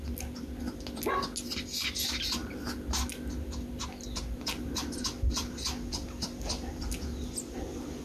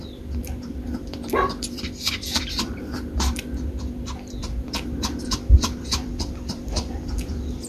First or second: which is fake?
second